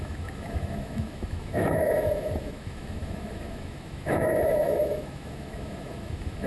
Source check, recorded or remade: remade